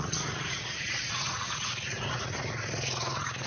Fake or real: fake